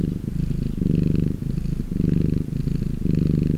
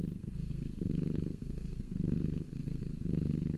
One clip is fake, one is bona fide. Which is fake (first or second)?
second